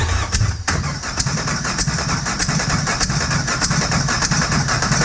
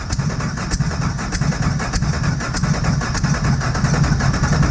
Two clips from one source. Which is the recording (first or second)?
second